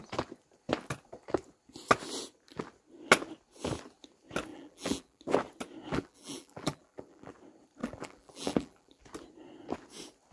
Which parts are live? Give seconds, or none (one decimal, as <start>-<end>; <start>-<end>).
0.0-4.5; 5.2-5.9; 7.3-7.8; 9.0-10.3